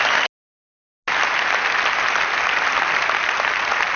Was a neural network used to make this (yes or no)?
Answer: no